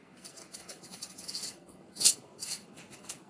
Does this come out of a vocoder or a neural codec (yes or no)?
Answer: yes